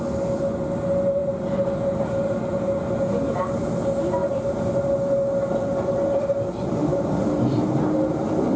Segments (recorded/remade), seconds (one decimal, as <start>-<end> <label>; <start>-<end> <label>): 0.0-8.6 recorded